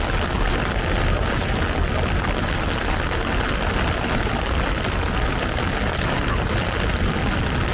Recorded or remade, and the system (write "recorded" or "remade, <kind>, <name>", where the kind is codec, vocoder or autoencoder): recorded